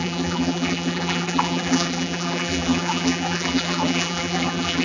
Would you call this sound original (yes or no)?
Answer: no